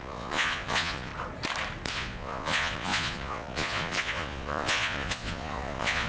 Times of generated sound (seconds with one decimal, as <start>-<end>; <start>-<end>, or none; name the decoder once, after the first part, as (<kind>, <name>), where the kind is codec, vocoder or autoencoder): 0.0-1.1 (vocoder, Vocos); 1.9-6.1